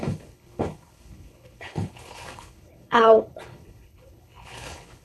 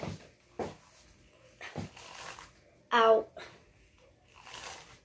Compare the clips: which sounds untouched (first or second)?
second